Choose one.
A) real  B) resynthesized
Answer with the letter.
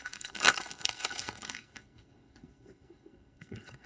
B